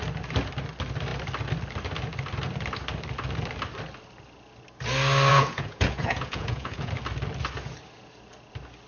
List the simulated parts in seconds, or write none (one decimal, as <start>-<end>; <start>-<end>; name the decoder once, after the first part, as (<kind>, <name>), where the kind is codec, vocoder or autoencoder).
5.3-6.9 (vocoder, Vocos)

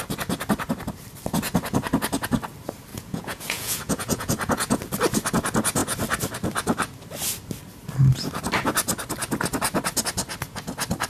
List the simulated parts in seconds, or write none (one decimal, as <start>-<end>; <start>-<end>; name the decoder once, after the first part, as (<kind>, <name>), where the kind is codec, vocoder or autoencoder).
2.9-4.8 (vocoder, Vocos)

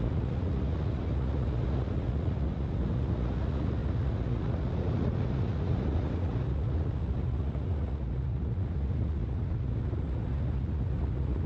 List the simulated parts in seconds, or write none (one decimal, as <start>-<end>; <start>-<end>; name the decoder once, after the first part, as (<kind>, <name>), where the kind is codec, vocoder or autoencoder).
0.0-11.5 (vocoder, Vocos)

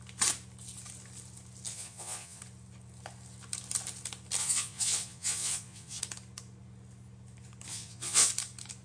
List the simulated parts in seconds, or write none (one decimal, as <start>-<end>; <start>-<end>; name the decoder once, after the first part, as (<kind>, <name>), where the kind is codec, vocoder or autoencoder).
1.7-2.4 (vocoder, Vocos); 4.4-6.0; 7.7-8.3

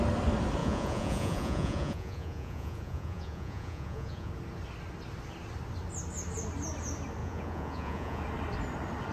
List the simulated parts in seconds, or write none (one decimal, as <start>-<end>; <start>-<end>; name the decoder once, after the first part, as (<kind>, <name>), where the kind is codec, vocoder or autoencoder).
0.6-4.3 (vocoder, Vocos); 7.2-8.2

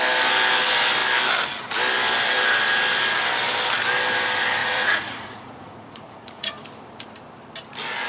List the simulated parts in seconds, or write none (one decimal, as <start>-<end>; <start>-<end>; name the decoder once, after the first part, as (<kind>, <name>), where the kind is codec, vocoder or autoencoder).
4.6-6.5 (vocoder, Vocos)

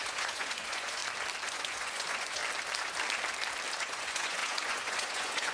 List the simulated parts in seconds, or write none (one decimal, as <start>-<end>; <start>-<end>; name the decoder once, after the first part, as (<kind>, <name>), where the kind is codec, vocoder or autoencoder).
0.0-1.0 (vocoder, Vocos); 1.5-2.4; 3.8-5.5